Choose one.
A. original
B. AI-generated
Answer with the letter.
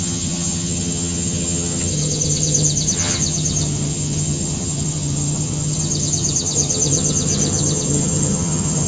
B